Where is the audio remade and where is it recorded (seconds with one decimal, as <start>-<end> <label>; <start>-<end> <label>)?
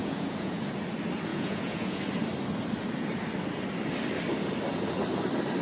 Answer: 0.0-0.6 remade; 0.6-1.3 recorded; 1.3-2.0 remade; 2.0-5.6 recorded